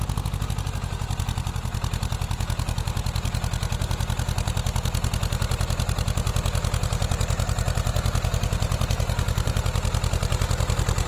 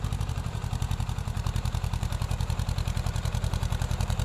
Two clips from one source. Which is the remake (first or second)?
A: second